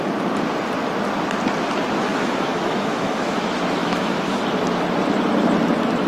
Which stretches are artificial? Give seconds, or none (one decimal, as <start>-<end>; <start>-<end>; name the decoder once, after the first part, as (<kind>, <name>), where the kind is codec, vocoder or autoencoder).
2.1-3.4 (autoencoder, DAC-VAE); 3.8-4.4